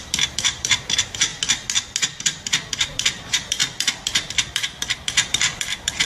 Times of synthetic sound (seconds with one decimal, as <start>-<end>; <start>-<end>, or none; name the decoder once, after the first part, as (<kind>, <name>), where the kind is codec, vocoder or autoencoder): 0.0-1.3 (vocoder, BigVGAN v2); 2.2-6.1